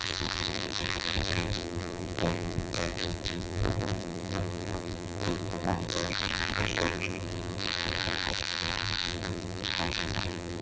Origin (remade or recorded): remade